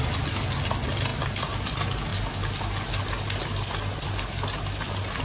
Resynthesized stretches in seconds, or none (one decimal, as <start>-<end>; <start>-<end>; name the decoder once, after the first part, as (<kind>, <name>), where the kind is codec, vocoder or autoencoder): none